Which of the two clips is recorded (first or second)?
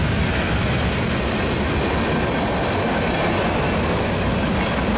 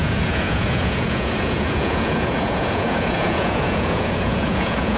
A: first